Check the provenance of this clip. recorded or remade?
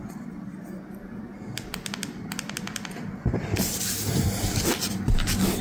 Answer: recorded